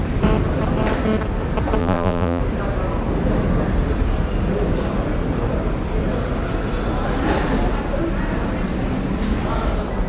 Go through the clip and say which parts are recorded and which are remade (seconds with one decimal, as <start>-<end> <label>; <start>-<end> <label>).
0.0-1.8 recorded; 1.8-2.4 remade; 2.4-10.1 recorded